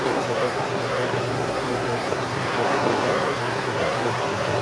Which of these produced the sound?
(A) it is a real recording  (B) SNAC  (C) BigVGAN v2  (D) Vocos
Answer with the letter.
B